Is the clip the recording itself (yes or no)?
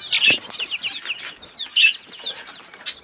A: yes